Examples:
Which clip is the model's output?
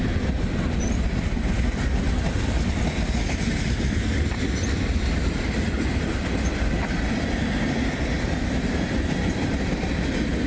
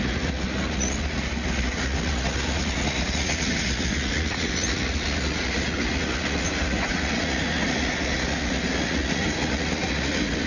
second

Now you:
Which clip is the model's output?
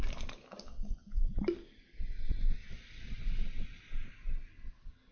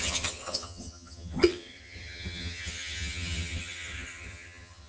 second